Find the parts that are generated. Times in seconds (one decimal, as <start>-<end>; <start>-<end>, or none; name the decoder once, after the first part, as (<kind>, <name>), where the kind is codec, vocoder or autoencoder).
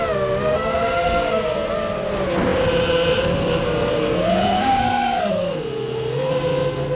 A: 0.5-1.7 (codec, SNAC); 3.6-6.3